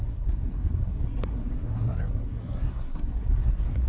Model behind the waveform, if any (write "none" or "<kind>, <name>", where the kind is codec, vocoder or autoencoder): codec, SNAC